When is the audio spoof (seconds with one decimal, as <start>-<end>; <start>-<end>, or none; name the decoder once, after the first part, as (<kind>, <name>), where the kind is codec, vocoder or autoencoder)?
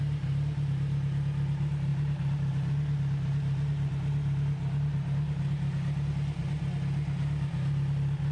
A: none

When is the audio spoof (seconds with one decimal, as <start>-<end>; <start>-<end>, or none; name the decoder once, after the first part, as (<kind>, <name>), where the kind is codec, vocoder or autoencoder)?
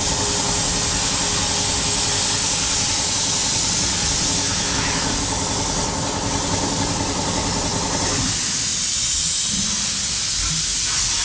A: 4.4-5.1 (autoencoder, DAC-VAE)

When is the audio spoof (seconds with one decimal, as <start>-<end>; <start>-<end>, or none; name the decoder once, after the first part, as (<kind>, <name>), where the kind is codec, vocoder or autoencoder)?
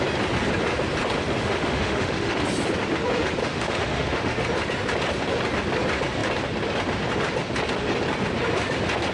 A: 1.4-2.4 (autoencoder, DAC-VAE); 3.4-4.4